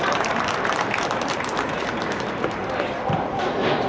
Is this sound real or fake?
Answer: fake